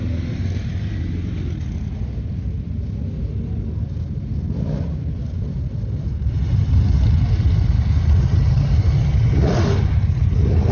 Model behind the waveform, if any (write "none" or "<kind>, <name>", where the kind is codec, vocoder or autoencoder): none